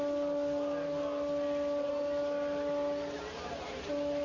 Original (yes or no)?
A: yes